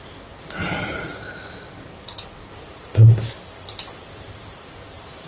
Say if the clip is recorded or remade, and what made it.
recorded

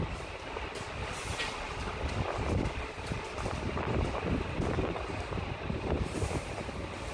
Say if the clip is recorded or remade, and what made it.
recorded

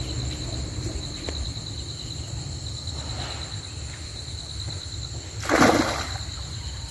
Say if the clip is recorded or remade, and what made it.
recorded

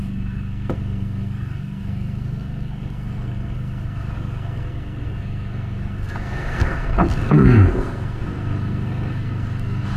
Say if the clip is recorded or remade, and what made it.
remade, codec, SNAC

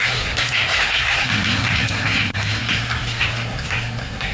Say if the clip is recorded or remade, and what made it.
remade, codec, SNAC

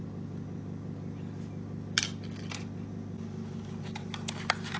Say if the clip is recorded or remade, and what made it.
recorded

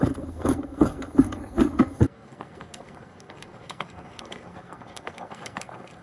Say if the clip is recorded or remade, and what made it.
remade, codec, SNAC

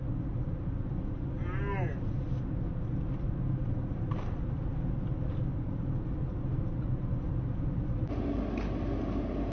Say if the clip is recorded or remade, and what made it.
recorded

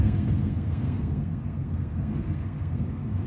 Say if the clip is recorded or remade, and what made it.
remade, codec, SNAC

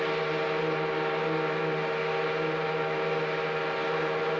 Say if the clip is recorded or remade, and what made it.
recorded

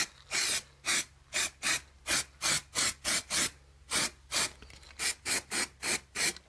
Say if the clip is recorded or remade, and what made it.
recorded